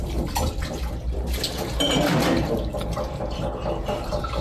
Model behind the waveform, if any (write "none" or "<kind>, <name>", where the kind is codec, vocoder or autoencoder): none